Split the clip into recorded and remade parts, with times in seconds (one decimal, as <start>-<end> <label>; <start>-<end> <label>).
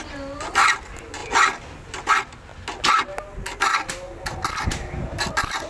0.0-5.7 recorded